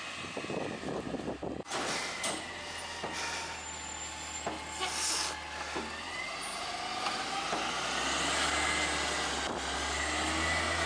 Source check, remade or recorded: recorded